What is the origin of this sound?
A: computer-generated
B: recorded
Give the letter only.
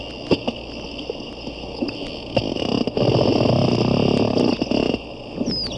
B